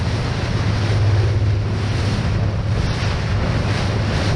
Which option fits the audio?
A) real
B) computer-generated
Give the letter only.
A